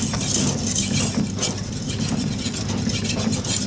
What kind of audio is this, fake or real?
real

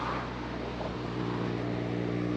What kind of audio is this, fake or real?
real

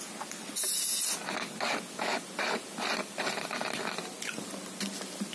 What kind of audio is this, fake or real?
real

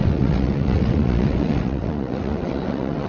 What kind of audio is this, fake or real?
fake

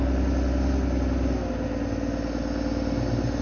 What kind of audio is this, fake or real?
real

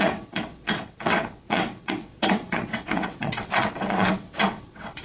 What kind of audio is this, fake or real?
fake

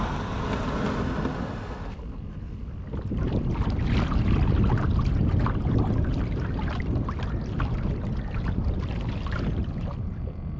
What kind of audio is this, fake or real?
real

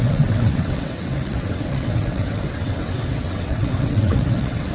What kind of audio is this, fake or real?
fake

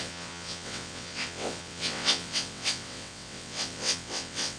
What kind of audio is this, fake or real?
fake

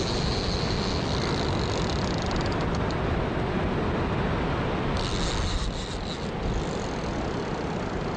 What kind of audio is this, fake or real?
real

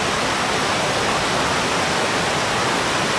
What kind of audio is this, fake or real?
real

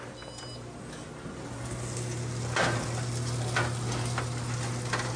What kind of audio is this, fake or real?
real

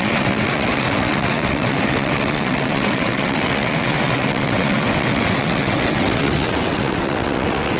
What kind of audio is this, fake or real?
fake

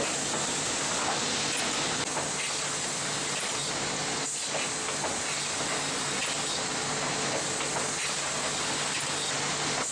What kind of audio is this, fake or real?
real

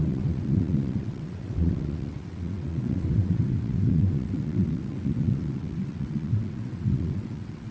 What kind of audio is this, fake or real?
fake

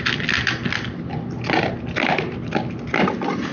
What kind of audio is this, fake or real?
real